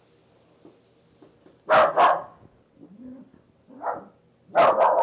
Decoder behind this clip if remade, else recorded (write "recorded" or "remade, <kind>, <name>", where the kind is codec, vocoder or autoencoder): recorded